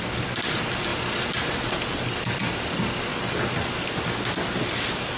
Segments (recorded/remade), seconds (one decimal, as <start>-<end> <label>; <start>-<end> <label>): 0.0-5.2 recorded